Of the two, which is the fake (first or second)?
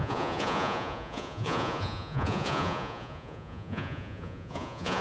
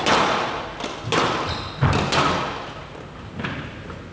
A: first